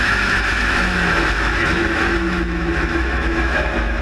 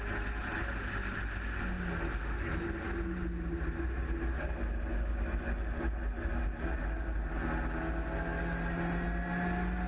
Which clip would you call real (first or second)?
second